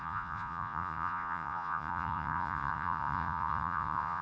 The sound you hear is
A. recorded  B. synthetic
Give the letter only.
B